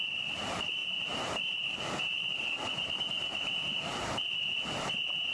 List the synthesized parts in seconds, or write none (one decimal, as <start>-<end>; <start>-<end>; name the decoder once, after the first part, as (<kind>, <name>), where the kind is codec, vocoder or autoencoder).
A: 0.0-5.3 (vocoder, BigVGAN v2)